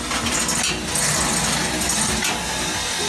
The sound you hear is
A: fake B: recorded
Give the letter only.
B